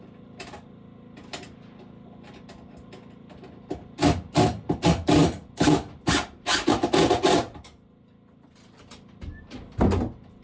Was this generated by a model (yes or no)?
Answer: no